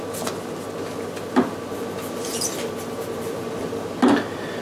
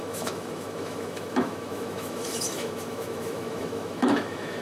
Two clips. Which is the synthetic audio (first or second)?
second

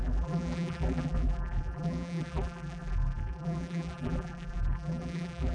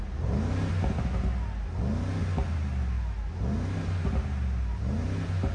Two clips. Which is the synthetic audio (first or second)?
first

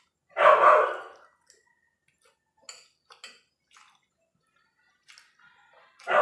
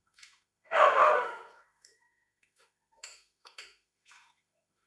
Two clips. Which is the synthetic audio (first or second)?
second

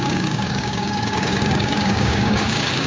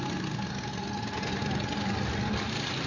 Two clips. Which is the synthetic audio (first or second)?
first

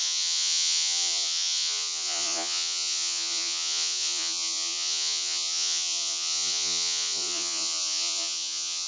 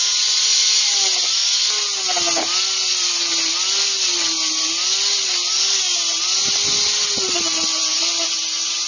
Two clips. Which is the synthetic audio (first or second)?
first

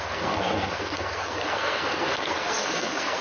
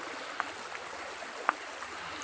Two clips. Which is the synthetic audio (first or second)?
first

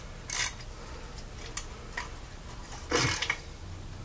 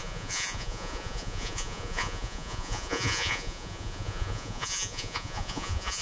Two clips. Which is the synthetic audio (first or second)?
second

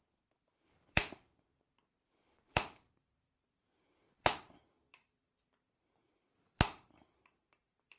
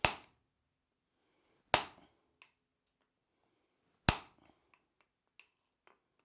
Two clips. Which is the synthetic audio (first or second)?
first